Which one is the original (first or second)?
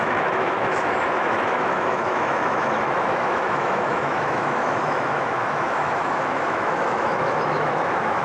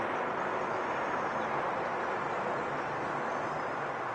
second